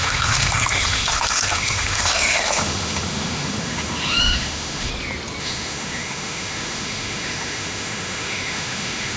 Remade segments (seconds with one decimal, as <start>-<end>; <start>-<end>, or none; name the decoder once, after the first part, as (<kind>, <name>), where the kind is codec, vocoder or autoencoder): 0.0-4.9 (autoencoder, DAC-VAE); 5.4-9.2